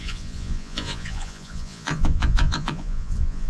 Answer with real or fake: fake